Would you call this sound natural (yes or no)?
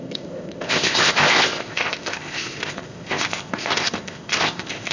no